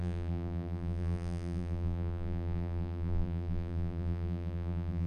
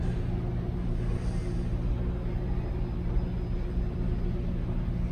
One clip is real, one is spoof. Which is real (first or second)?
second